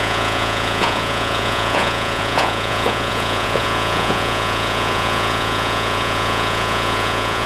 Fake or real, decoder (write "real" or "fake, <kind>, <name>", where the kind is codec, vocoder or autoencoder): fake, vocoder, Vocos